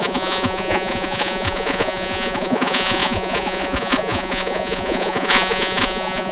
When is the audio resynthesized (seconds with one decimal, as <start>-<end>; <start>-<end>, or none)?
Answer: 0.0-6.3